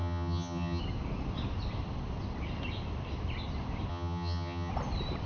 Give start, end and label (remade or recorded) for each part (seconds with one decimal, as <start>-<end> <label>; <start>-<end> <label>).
0.0-0.8 remade; 0.8-3.9 recorded; 3.9-4.7 remade; 4.7-5.3 recorded